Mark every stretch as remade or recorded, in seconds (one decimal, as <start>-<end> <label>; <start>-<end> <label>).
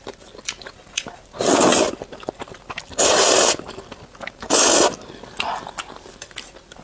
0.0-6.8 recorded